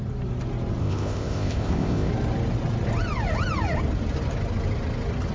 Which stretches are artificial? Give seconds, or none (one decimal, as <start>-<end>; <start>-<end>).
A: 0.8-2.1